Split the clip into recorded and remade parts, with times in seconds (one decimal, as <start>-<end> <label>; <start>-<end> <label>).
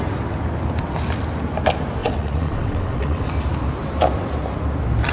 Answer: 0.0-2.0 recorded; 2.0-3.3 remade; 3.3-5.1 recorded